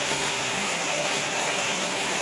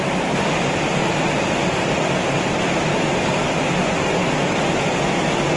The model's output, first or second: first